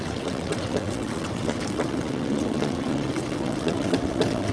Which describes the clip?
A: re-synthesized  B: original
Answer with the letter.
A